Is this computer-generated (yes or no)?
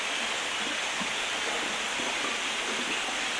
no